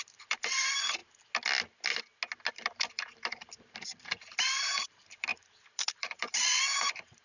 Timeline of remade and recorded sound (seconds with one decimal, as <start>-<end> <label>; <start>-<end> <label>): 0.0-1.0 remade; 1.0-2.5 recorded; 2.5-7.2 remade

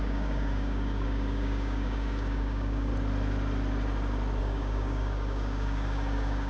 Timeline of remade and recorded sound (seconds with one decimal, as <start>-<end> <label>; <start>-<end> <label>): 0.0-2.9 remade; 2.9-4.4 recorded; 4.4-6.5 remade

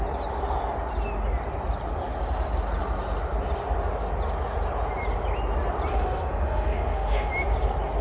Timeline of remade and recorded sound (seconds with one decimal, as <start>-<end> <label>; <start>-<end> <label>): 0.0-5.9 recorded; 5.9-7.3 remade; 7.3-8.0 recorded

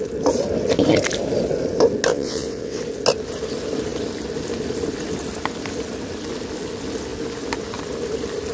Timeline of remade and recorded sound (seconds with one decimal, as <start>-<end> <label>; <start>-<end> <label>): 0.0-2.1 recorded; 2.1-2.8 remade; 2.8-8.5 recorded

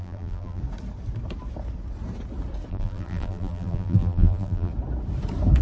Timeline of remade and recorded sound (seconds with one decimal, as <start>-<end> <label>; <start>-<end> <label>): 0.0-0.6 remade; 0.6-2.7 recorded; 2.7-4.7 remade; 4.7-5.6 recorded

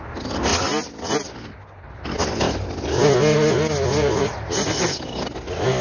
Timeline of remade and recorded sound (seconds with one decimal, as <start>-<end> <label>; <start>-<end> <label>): 0.0-5.8 recorded